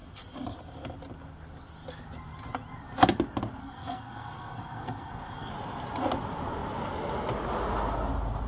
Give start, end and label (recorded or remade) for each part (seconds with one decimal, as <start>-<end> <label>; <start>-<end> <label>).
0.0-3.6 recorded; 3.6-5.5 remade; 5.5-8.5 recorded